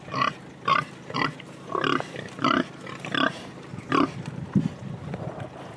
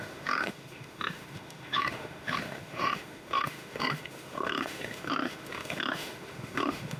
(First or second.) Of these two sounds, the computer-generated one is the second